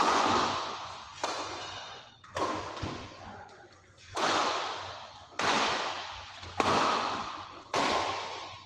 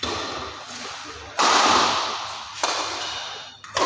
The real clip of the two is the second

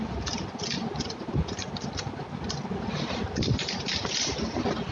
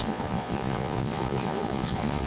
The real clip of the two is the first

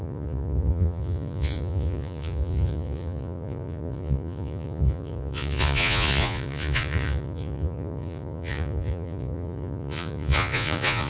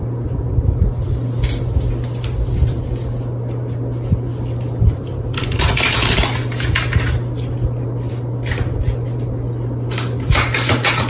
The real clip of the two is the second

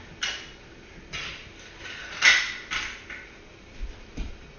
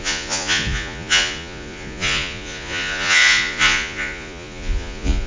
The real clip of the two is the first